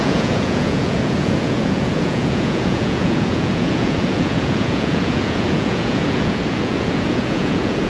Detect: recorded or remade remade